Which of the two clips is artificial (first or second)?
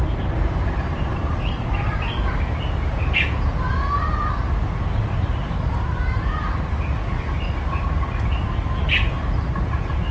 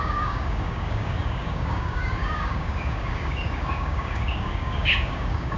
second